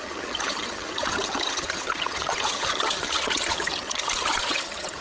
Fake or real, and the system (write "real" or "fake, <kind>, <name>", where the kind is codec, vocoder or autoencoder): fake, vocoder, HiFi-GAN